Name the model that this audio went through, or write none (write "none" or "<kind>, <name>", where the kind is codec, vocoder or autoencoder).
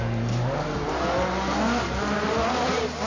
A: none